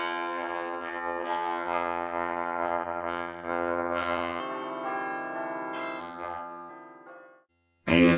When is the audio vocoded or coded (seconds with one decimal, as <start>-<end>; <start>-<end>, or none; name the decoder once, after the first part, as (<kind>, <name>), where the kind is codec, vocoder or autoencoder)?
0.0-4.4 (vocoder, HiFi-GAN); 6.0-6.7; 7.5-8.2